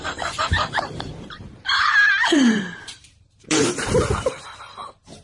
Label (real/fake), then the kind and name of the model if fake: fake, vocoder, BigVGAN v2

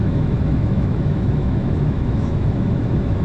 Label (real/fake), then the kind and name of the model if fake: fake, autoencoder, DAC-VAE